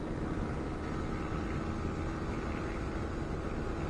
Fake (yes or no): no